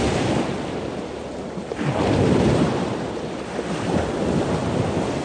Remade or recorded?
recorded